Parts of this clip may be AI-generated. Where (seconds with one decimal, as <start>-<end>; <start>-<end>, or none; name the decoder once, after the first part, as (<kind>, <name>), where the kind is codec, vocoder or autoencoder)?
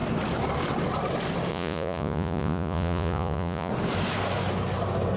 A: 1.5-3.7 (vocoder, Vocos)